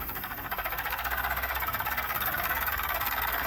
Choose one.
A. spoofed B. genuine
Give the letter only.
A